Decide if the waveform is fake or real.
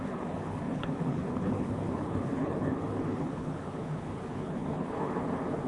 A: fake